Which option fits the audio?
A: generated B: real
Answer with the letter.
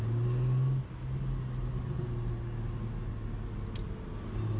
B